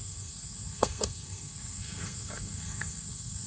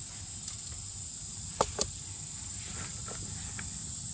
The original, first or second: second